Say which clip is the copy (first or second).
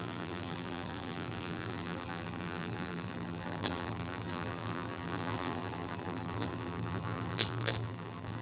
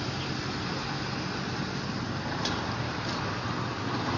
first